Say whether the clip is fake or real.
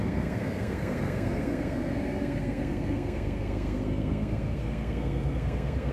fake